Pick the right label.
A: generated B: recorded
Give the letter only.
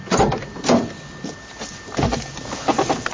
B